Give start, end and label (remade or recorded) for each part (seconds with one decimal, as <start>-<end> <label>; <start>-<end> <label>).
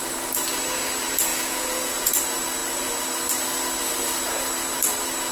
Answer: 0.0-1.3 recorded; 1.3-2.1 remade; 2.1-5.3 recorded